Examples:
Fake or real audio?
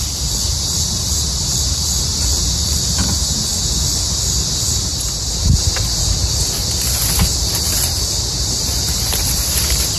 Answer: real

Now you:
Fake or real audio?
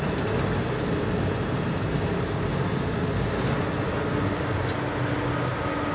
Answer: real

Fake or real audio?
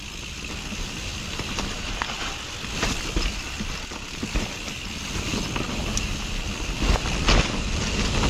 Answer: real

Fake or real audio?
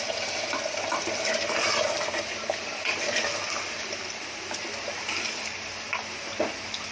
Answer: fake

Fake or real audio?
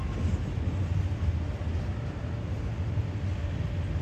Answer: real